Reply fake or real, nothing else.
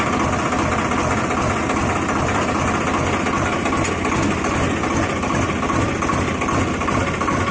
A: real